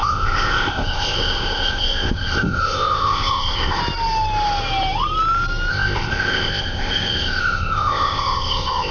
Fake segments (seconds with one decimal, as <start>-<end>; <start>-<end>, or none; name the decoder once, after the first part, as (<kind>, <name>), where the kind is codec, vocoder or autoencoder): 0.0-3.8 (codec, ZipCodec); 5.7-8.9